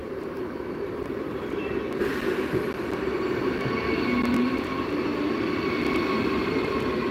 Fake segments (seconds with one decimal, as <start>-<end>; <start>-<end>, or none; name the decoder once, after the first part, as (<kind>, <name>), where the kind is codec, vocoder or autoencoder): 0.0-2.1 (vocoder, BigVGAN v2); 3.0-5.1; 6.3-7.1